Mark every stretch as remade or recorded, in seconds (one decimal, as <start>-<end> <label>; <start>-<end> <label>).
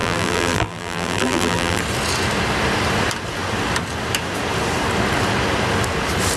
0.0-1.8 remade; 1.8-6.4 recorded